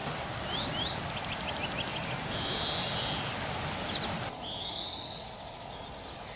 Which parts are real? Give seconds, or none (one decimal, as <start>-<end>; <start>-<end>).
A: 0.0-6.4